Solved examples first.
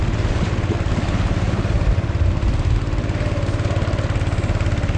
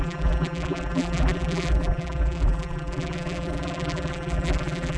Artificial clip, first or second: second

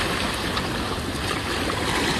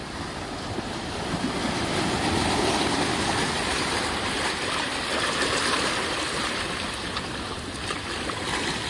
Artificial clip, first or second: second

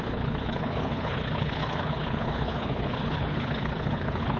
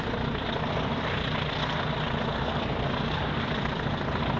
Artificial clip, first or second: first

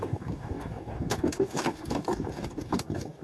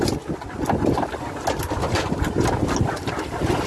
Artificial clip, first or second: first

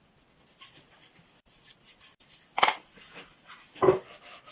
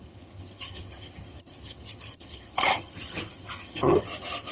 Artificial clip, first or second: second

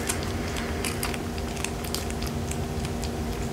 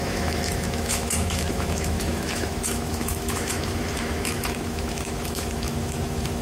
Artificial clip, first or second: second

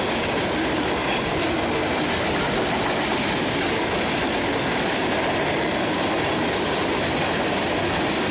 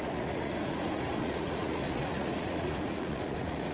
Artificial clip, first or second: second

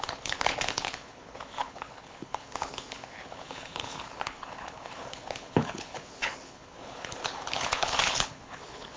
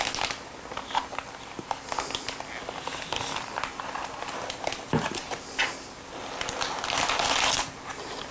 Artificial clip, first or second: first